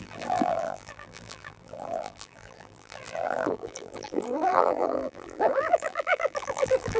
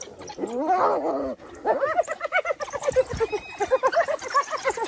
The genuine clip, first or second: second